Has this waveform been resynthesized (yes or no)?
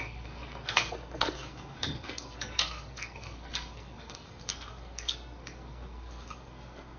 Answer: yes